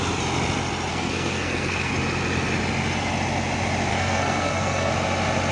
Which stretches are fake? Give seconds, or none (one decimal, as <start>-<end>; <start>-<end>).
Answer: 0.9-1.9; 3.9-4.9

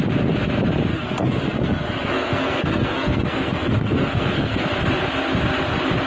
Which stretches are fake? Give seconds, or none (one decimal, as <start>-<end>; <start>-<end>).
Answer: 0.9-4.6

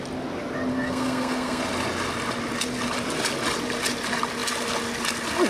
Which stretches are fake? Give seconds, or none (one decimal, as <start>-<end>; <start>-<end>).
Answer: 0.7-1.6

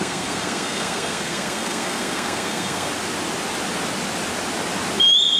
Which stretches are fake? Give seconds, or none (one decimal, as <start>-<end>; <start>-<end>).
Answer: 0.0-2.9

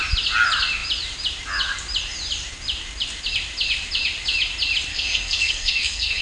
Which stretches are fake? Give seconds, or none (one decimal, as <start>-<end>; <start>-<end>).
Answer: 4.9-6.2